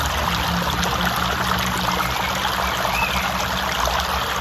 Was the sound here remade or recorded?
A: recorded